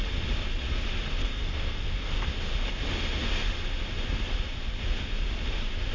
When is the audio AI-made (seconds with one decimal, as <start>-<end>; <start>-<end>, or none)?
1.2-2.2